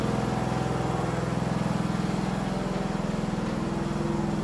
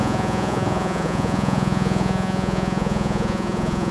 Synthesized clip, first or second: second